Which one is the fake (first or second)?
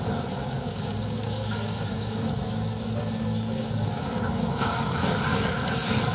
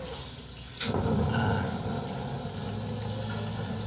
first